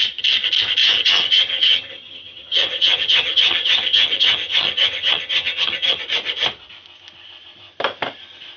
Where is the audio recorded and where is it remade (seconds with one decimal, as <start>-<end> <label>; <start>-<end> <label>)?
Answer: 0.0-0.8 recorded; 0.8-6.0 remade; 6.0-8.6 recorded